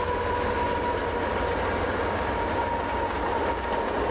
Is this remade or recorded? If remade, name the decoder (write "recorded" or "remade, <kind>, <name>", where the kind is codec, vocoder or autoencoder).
recorded